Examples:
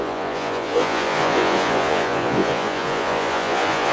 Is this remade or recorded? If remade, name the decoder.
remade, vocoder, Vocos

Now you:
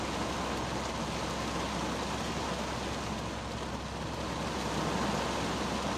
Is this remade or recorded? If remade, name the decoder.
recorded